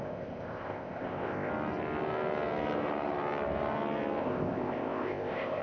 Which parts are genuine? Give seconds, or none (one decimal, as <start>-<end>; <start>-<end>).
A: 1.5-4.2